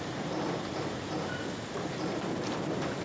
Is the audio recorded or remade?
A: recorded